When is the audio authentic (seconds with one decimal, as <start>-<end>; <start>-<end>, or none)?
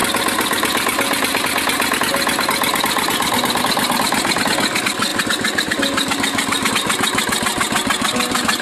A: 1.4-5.1; 6.7-8.6